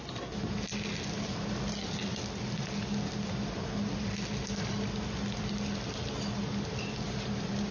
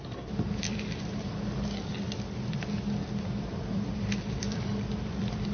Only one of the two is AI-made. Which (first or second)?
second